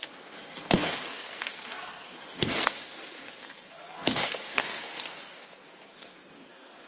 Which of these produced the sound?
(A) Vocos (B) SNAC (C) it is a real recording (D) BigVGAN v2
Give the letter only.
B